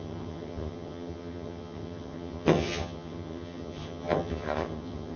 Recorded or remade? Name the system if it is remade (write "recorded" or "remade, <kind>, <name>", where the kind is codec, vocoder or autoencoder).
remade, vocoder, HiFi-GAN